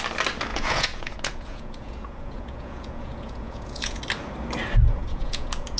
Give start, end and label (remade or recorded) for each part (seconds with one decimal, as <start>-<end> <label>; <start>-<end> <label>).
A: 0.0-0.5 recorded; 0.5-4.0 remade; 4.0-5.0 recorded; 5.0-5.8 remade